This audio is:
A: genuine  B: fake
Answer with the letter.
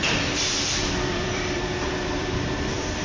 B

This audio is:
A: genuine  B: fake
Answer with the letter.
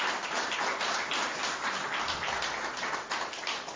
A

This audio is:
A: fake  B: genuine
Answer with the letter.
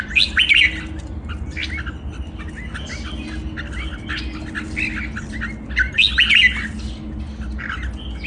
B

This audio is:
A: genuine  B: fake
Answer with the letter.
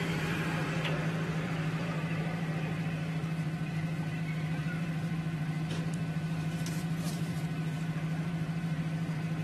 B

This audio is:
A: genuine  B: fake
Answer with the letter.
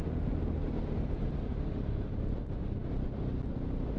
A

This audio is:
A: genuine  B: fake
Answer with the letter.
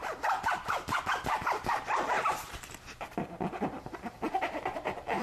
B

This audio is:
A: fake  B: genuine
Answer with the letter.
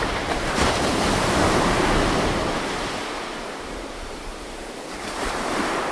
A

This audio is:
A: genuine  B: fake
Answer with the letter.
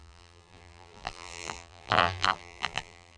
B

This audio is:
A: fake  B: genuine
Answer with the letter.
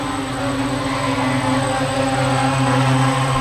B